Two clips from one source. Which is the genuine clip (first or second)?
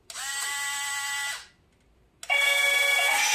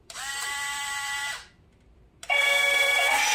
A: first